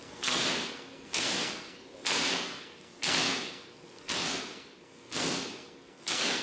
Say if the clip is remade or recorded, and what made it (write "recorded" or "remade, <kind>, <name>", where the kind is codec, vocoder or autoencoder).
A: remade, codec, SNAC